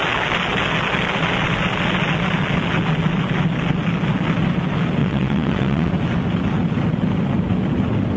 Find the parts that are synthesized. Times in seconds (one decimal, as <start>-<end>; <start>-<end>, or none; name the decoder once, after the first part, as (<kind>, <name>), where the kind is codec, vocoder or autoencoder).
5.0-5.9 (vocoder, WaveNeXt)